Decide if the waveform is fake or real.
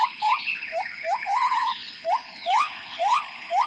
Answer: fake